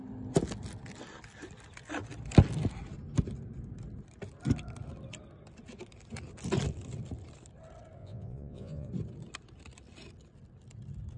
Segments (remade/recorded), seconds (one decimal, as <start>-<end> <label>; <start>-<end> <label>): 0.0-8.0 recorded; 8.0-8.9 remade; 8.9-11.2 recorded

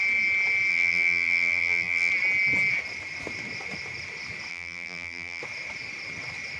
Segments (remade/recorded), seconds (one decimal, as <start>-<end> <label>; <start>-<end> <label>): 0.0-0.7 recorded; 0.7-2.1 remade; 2.1-4.5 recorded; 4.5-5.4 remade; 5.4-6.6 recorded

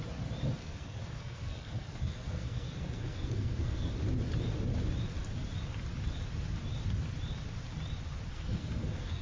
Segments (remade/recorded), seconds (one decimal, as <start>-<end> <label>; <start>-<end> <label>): 0.0-0.6 recorded; 0.6-3.9 remade; 3.9-8.3 recorded; 8.3-9.2 remade

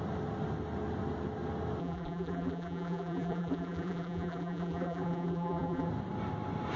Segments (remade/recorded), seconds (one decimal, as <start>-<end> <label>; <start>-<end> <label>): 0.0-1.8 recorded; 1.8-5.9 remade; 5.9-6.8 recorded

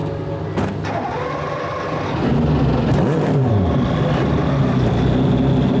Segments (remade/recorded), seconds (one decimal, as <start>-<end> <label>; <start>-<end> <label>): 0.0-5.8 recorded

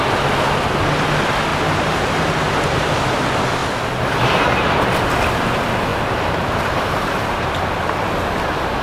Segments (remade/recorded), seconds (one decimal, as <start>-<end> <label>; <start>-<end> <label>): 0.0-1.5 recorded; 1.5-3.0 remade; 3.0-3.6 recorded; 3.6-4.2 remade; 4.2-5.9 recorded; 5.9-7.7 remade; 7.7-8.8 recorded